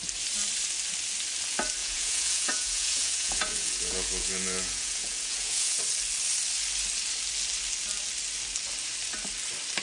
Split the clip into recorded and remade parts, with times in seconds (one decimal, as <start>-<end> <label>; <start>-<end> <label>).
0.0-1.8 recorded; 1.8-5.8 remade; 5.8-9.8 recorded

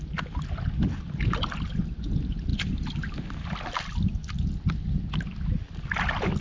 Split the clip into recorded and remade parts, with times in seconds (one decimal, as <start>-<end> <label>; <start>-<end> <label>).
0.0-6.4 recorded

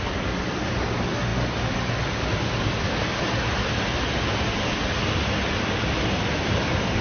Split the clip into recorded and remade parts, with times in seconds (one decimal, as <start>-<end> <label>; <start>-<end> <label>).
0.0-7.0 recorded

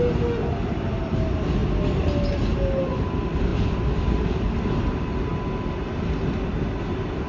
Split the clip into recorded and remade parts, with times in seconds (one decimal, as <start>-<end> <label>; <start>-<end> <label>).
0.0-7.3 recorded

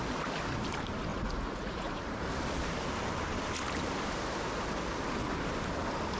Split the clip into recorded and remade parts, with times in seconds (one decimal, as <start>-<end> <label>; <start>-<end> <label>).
0.0-1.1 recorded; 1.1-2.2 remade; 2.2-6.2 recorded

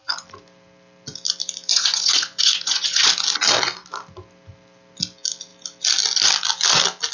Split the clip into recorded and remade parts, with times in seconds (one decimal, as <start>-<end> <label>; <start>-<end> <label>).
0.0-1.7 recorded; 1.7-3.1 remade; 3.1-7.1 recorded